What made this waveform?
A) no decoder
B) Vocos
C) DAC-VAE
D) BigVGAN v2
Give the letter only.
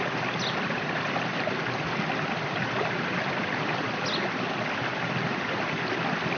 A